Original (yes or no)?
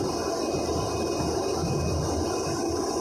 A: yes